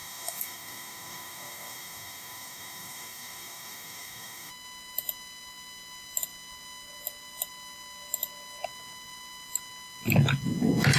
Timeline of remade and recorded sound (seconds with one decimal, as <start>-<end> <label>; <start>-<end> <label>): 0.0-4.5 remade; 4.5-11.0 recorded